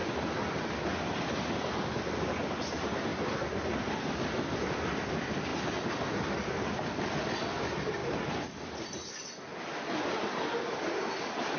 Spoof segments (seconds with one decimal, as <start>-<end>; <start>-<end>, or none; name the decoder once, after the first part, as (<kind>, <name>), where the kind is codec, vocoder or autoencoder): none